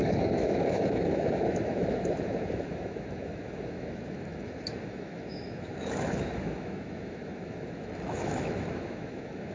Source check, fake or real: fake